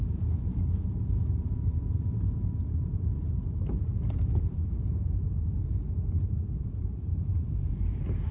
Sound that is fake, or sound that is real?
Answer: fake